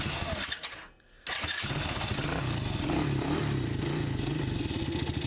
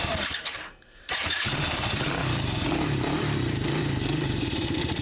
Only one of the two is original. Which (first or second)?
first